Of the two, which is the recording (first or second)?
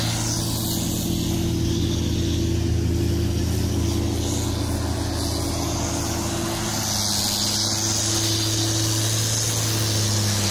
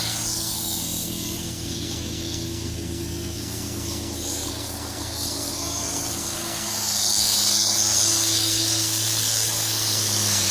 first